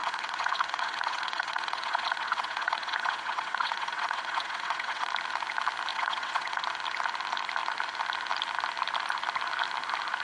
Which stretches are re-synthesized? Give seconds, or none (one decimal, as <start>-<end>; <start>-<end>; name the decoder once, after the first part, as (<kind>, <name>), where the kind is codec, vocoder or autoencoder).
0.0-5.1 (vocoder, WaveNeXt); 5.9-6.6